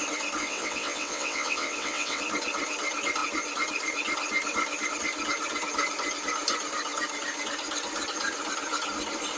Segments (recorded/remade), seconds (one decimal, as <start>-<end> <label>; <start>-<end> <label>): 0.0-0.4 recorded; 0.4-2.2 remade; 2.2-9.4 recorded

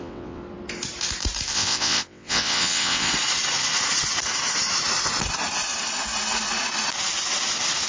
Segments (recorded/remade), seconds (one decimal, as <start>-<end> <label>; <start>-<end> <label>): 0.0-0.4 remade; 0.4-1.5 recorded; 1.5-3.1 remade; 3.1-7.9 recorded

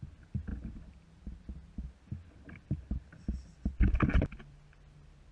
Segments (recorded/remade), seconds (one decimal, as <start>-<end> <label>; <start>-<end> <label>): 0.0-5.3 recorded

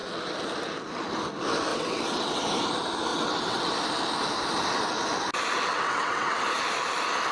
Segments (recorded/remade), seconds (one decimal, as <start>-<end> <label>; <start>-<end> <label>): 0.0-1.7 recorded; 1.7-2.4 remade; 2.4-3.1 recorded; 3.1-3.7 remade; 3.7-5.7 recorded; 5.7-6.4 remade; 6.4-7.3 recorded

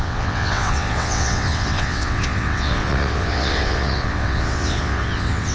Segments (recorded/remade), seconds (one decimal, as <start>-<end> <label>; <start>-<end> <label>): 0.0-5.5 remade

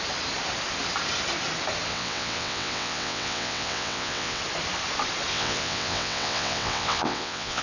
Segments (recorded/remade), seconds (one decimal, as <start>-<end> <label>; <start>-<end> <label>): 0.0-1.9 recorded; 1.9-4.4 remade; 4.4-5.3 recorded; 5.3-7.6 remade